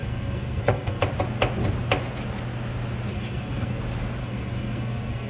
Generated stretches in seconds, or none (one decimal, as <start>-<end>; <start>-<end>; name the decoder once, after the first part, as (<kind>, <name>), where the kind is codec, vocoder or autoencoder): 0.0-1.0 (codec, SNAC); 3.1-3.8; 4.2-5.3